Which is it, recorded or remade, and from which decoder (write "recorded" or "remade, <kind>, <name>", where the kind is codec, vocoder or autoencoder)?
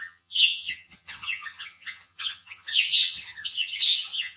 remade, vocoder, HiFi-GAN